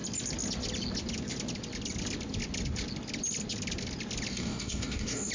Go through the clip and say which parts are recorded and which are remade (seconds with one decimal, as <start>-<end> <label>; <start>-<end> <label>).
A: 0.0-4.3 recorded; 4.3-5.3 remade